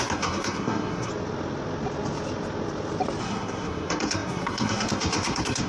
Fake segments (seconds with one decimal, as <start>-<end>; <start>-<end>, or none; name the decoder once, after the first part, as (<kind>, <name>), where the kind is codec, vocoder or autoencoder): 0.0-1.1 (codec, SNAC); 3.2-5.7